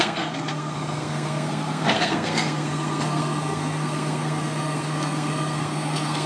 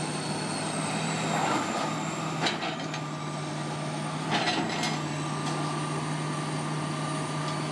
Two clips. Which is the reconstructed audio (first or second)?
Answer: first